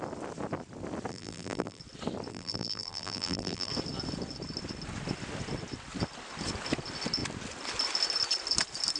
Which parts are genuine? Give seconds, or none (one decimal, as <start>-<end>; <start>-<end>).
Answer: 0.0-1.1; 1.8-2.3; 3.7-9.0